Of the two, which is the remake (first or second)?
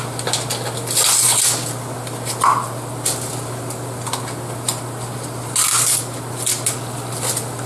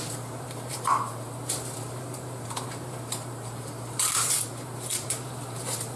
second